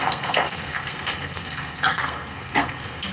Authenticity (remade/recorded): remade